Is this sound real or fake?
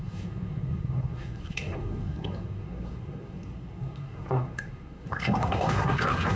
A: fake